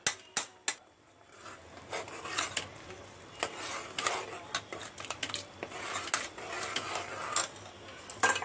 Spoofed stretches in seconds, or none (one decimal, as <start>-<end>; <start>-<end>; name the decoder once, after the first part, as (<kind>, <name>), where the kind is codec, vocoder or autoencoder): none